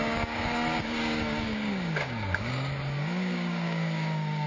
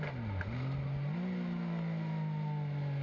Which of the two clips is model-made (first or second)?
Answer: first